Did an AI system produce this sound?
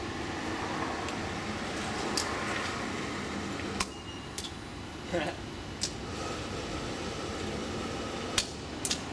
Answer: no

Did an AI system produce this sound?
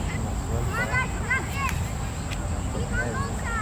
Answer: no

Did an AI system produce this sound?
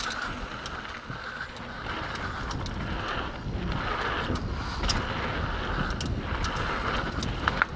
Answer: no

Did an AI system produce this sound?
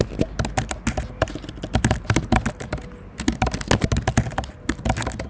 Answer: no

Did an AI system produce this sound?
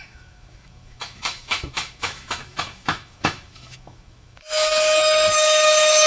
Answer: yes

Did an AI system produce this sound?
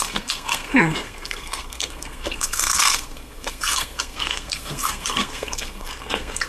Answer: yes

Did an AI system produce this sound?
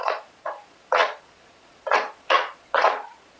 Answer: yes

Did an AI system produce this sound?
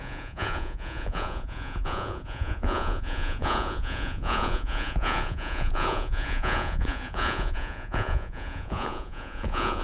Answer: yes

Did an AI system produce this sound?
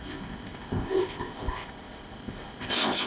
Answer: yes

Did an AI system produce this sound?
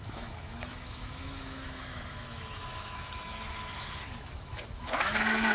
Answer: yes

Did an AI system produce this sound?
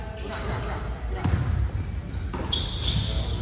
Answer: no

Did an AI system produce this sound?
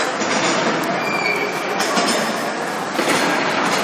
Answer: no